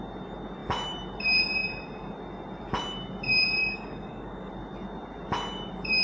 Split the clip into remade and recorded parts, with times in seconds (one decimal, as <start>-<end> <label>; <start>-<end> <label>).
0.0-3.6 recorded; 3.6-4.5 remade; 4.5-6.0 recorded